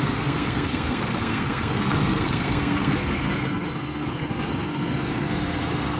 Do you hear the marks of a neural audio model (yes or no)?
yes